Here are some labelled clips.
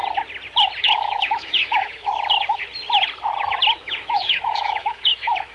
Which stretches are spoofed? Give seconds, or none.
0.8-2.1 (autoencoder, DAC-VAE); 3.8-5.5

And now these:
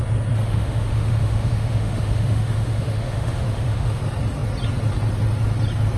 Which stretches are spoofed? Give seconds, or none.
0.4-4.0 (autoencoder, DAC-VAE)

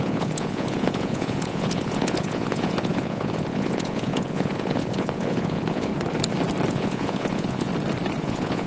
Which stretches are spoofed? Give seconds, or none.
0.0-5.9 (vocoder, Vocos); 6.7-7.7; 8.2-8.7